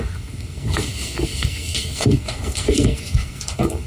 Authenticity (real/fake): fake